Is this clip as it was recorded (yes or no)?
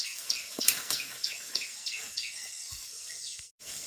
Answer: no